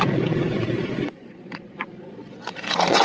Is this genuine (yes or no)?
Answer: no